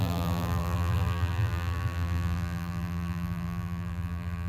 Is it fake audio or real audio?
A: fake